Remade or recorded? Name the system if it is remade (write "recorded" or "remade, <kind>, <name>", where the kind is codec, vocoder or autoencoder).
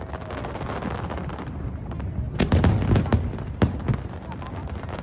recorded